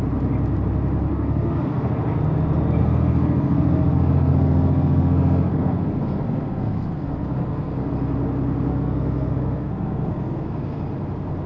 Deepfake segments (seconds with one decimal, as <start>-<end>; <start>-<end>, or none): 1.1-1.9; 2.8-7.9; 8.7-10.8